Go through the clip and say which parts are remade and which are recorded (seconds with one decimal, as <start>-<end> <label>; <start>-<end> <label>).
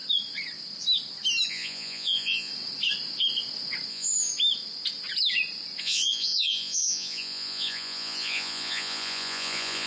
0.0-1.5 recorded; 1.5-2.5 remade; 2.5-3.9 recorded; 3.9-4.3 remade; 4.3-5.8 recorded; 5.8-9.9 remade